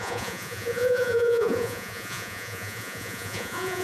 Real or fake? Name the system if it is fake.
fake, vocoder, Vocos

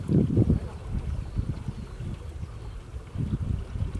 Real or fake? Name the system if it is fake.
real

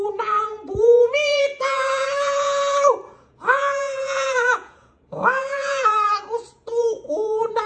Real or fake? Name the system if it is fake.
fake, vocoder, Vocos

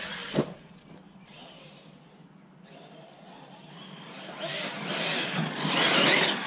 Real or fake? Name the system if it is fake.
real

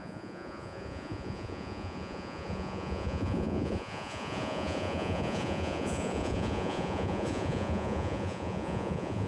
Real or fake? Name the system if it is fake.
fake, vocoder, Vocos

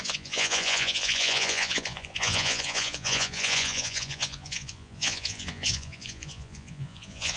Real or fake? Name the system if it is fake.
fake, vocoder, Vocos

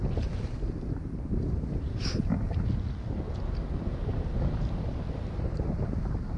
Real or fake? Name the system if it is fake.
real